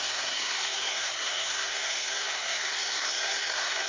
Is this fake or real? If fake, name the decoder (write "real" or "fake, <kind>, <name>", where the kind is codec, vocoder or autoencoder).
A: fake, codec, SNAC